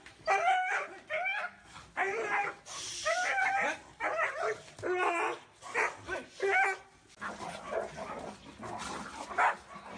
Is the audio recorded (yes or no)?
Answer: yes